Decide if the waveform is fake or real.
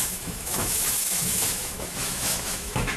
fake